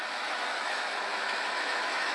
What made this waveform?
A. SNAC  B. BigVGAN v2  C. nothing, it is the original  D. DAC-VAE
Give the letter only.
D